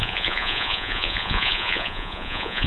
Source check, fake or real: fake